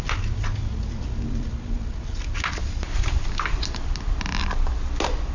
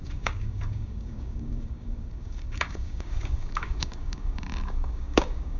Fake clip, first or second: second